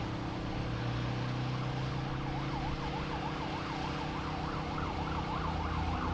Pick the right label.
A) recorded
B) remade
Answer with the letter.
A